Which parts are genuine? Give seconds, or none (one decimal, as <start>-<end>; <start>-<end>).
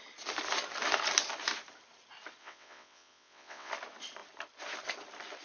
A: 0.0-2.4; 3.7-5.4